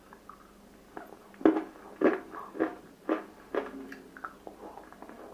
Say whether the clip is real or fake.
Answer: real